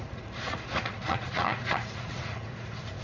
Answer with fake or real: fake